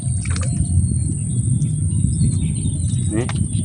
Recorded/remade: recorded